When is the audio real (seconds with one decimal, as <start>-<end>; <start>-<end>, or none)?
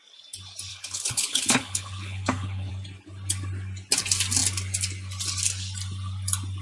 0.0-0.7; 2.7-6.6